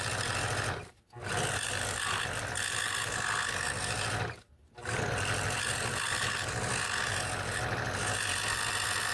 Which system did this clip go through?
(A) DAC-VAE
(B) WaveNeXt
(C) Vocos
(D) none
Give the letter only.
D